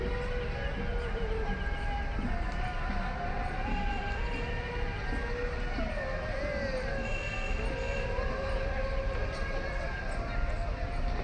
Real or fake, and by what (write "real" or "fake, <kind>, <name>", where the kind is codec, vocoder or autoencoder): real